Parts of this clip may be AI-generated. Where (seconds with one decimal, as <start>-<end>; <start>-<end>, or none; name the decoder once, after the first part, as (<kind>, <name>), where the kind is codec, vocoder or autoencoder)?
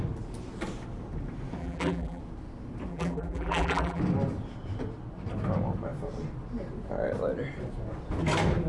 1.6-2.2 (vocoder, BigVGAN v2); 2.9-4.0